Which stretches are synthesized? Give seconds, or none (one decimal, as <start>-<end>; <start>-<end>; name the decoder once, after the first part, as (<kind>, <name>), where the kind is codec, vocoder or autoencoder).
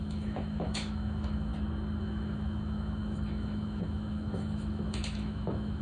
0.0-1.5 (autoencoder, DAC-VAE); 2.0-5.8